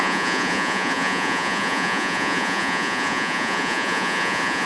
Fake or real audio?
fake